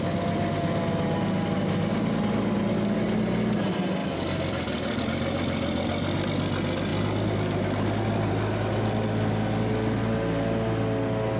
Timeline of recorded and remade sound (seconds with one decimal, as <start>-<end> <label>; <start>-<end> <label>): 0.0-11.4 recorded